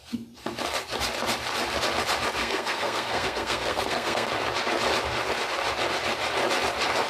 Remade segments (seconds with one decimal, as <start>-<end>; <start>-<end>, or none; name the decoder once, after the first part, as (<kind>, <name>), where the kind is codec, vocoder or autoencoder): 2.4-4.3 (codec, SNAC)